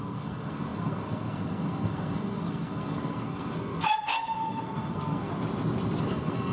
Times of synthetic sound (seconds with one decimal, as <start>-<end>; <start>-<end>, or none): 0.0-5.3; 6.0-6.5